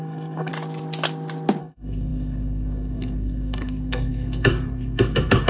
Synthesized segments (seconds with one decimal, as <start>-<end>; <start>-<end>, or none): 0.0-0.5; 1.6-5.5